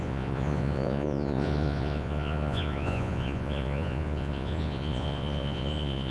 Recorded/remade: remade